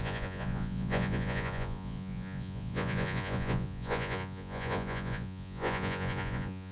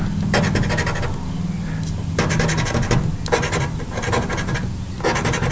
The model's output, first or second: first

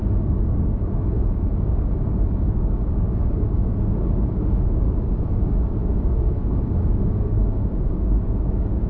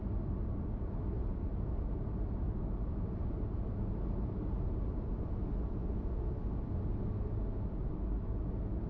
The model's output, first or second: first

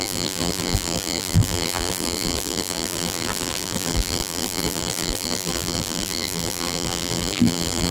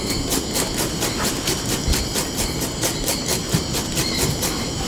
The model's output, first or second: first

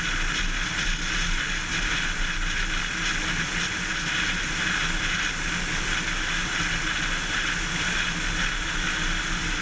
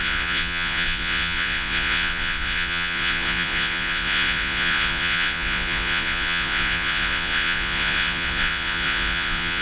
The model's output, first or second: second